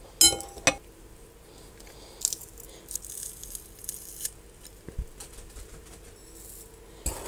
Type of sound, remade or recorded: recorded